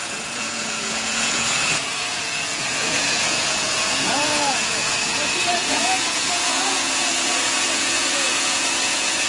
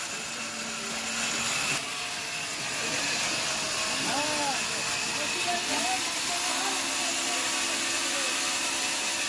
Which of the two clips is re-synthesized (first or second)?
first